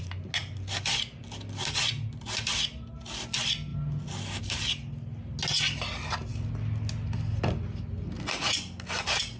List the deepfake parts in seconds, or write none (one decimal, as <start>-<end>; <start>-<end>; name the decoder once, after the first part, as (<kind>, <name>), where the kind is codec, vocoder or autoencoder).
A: none